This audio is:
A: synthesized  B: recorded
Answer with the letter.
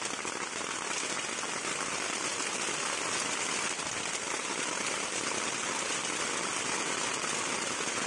B